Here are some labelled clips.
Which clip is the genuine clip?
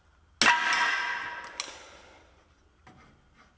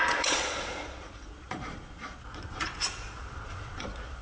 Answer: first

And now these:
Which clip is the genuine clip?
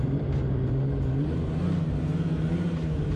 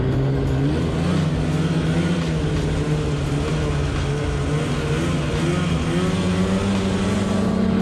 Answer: second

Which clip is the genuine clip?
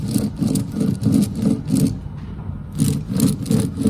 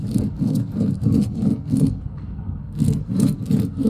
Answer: first